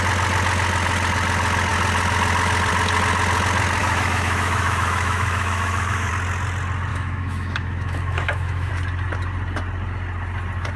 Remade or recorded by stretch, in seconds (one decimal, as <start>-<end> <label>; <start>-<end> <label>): 0.0-3.8 recorded; 3.8-6.1 remade; 6.1-6.9 recorded; 6.9-8.7 remade; 8.7-10.8 recorded